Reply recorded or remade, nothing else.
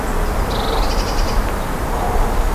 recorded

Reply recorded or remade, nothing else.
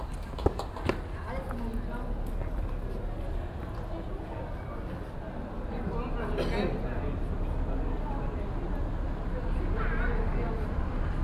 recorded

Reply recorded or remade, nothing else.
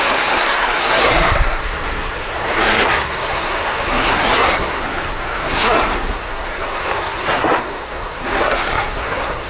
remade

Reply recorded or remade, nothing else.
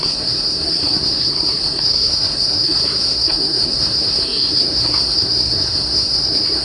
remade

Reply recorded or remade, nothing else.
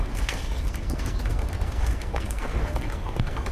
remade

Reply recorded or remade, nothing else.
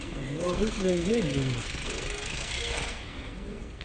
remade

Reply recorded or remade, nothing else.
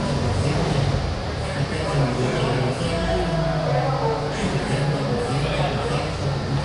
recorded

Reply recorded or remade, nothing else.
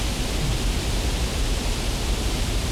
recorded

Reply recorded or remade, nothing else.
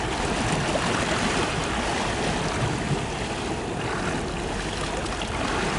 recorded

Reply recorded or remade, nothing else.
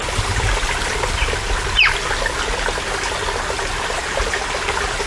recorded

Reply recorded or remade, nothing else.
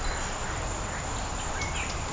recorded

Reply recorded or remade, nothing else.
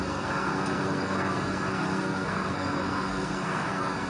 remade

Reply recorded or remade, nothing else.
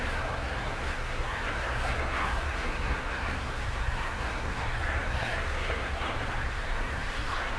remade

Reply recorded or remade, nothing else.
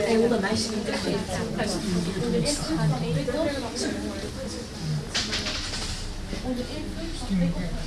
recorded